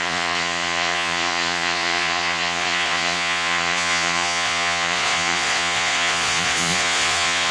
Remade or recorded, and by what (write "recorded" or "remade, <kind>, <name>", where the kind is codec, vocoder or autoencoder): remade, vocoder, Vocos